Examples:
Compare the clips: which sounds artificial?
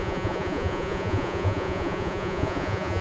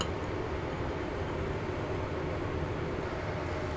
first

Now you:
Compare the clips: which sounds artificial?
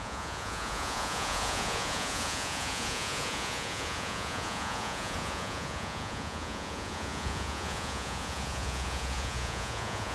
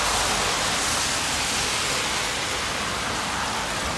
first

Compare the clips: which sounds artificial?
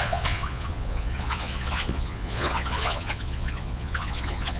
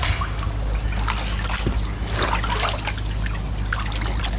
first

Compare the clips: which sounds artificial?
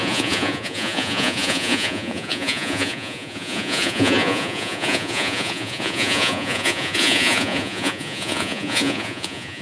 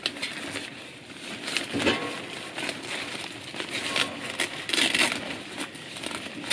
first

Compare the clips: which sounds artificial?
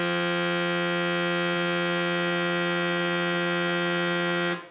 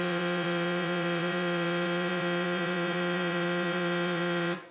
second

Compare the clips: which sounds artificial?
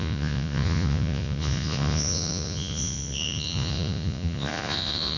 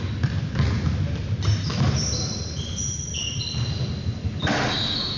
first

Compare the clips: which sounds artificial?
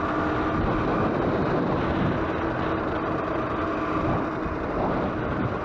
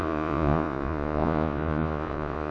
second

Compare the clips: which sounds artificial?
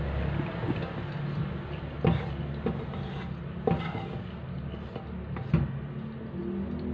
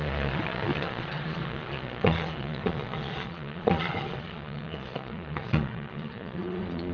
second